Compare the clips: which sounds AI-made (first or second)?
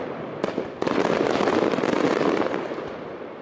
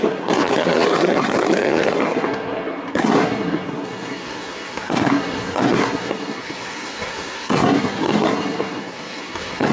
second